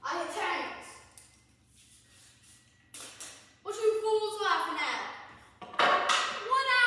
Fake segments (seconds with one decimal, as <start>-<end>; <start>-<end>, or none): none